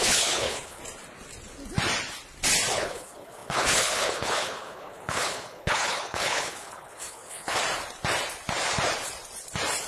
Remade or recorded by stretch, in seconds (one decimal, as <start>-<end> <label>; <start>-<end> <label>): 0.0-0.8 remade; 0.8-2.7 recorded; 2.7-7.6 remade; 7.6-9.9 recorded